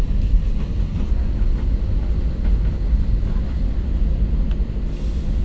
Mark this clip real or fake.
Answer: real